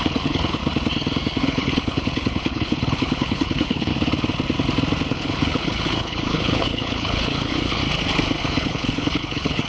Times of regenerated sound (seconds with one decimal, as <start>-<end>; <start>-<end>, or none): 0.0-0.6; 1.4-3.9; 5.1-7.8; 8.4-9.7